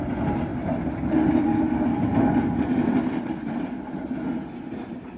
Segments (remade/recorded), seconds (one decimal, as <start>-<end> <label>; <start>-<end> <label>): 0.0-5.2 recorded